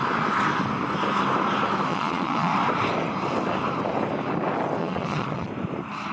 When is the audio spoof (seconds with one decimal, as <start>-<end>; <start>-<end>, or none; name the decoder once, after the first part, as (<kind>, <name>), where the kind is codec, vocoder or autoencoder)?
1.9-2.5 (vocoder, Vocos); 4.8-5.5

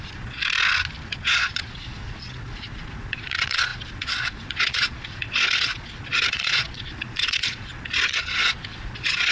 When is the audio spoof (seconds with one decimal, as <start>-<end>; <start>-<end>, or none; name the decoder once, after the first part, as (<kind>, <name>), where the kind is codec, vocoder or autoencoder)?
0.0-0.4 (vocoder, Vocos); 1.1-9.3

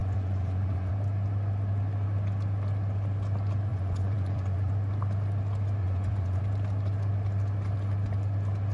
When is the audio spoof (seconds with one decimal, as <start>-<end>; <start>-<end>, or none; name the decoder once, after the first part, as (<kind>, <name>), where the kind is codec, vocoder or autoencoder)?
0.0-0.9 (vocoder, Vocos); 3.7-4.7; 5.8-6.4